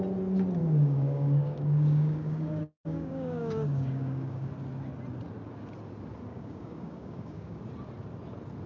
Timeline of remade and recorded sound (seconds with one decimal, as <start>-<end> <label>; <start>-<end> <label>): 0.0-0.6 recorded; 0.6-4.5 remade; 4.5-6.3 recorded; 6.3-7.6 remade; 7.6-8.7 recorded